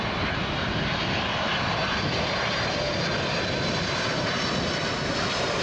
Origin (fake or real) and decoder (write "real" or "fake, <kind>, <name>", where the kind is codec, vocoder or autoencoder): real